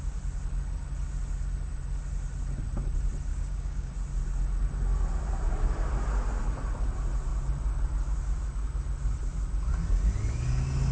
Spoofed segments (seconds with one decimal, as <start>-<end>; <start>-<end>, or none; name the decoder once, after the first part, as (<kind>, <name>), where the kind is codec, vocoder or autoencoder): 3.3-3.9 (codec, DAC)